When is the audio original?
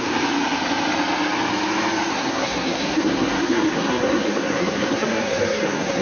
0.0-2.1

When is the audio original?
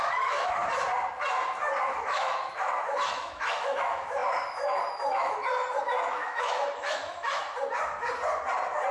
0.6-1.9; 5.5-6.1; 7.4-8.9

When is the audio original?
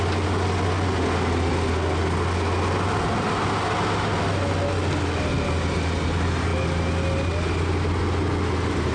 0.0-8.9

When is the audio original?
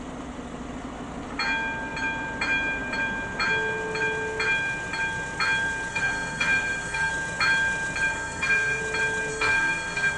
0.0-5.9; 7.1-8.1; 8.8-9.3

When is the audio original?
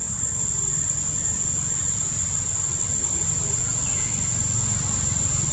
0.0-5.5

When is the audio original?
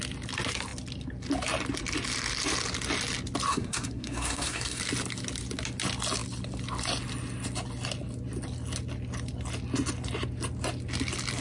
0.0-3.5; 4.8-11.4